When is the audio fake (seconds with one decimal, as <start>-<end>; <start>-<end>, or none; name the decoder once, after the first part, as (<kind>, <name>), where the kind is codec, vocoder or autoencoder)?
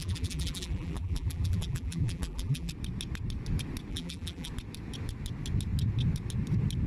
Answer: 0.0-2.7 (vocoder, BigVGAN v2); 3.9-4.5